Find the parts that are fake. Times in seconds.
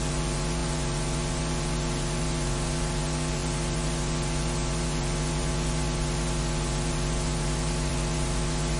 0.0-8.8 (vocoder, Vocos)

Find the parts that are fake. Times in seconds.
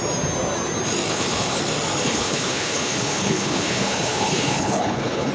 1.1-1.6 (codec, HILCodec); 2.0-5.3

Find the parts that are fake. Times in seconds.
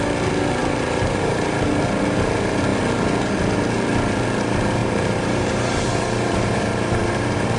0.6-1.7 (vocoder, BigVGAN v2); 4.8-7.6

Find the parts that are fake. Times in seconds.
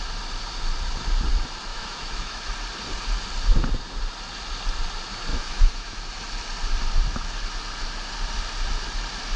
1.7-2.5 (autoencoder, DAC-VAE); 5.3-6.1